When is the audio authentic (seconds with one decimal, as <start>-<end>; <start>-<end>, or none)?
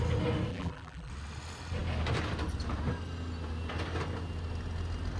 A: 0.0-0.5; 1.1-5.2